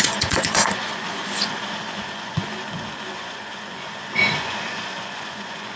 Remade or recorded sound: remade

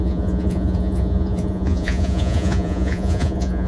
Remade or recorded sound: remade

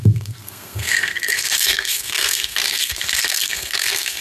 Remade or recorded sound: remade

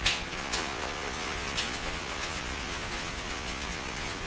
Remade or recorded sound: remade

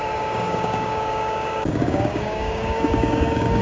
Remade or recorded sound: remade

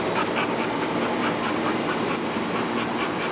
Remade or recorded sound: recorded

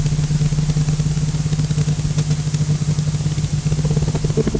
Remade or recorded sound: recorded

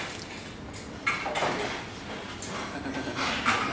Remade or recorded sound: recorded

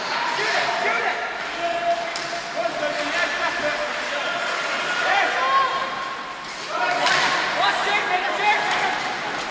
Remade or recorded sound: recorded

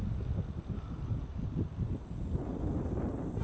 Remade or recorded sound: recorded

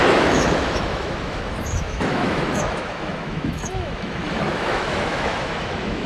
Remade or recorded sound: remade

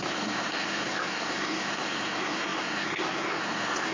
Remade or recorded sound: remade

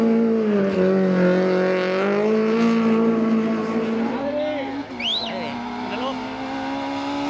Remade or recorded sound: recorded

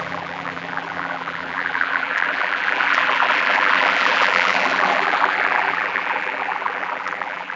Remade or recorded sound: remade